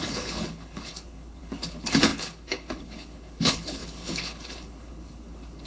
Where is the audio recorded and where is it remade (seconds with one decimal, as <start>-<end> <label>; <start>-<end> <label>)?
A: 0.0-5.7 remade